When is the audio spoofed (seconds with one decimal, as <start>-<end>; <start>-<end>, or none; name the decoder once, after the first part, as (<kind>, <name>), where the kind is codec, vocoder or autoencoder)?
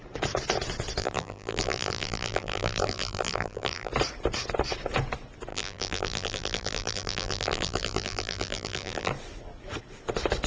1.0-3.9 (vocoder, BigVGAN v2); 5.5-9.1